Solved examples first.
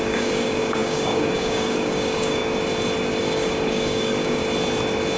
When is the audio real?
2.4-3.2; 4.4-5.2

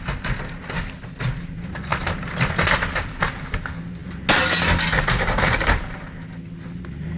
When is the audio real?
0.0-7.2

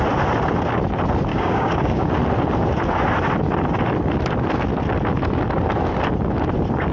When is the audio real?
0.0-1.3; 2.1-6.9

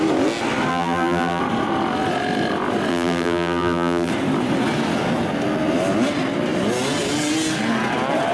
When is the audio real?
0.0-0.7; 1.4-2.9; 4.1-8.3

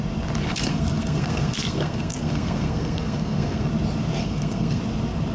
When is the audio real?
0.0-0.5; 3.7-4.2; 4.8-5.3

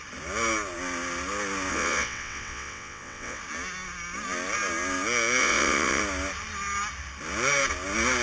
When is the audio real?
0.0-1.7; 3.4-5.4; 6.0-8.2

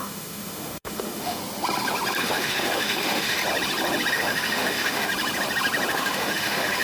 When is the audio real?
1.4-2.2; 3.4-4.1; 5.1-5.9